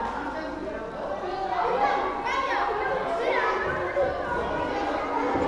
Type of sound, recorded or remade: recorded